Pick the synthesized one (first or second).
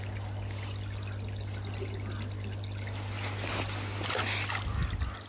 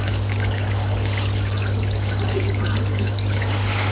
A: second